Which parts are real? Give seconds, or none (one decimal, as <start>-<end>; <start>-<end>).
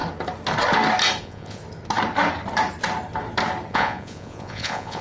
0.0-1.2; 1.6-3.7